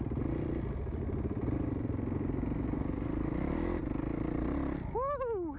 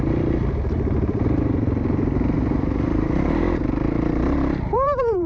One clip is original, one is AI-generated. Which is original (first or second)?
first